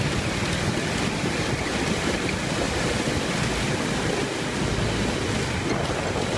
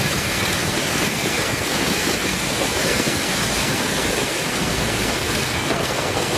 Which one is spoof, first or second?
second